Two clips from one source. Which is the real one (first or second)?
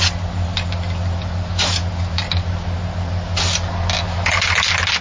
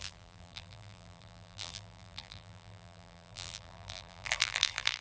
first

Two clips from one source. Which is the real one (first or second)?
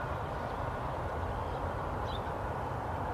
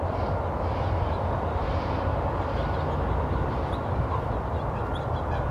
second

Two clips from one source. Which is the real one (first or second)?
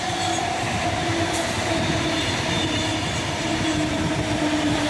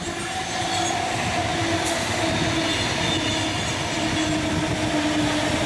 second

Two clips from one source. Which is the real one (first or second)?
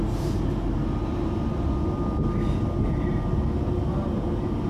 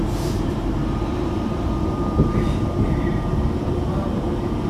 first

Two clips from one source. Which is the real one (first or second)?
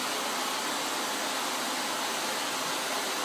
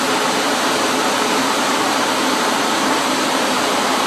first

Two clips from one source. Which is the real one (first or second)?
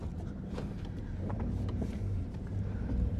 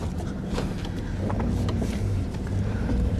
second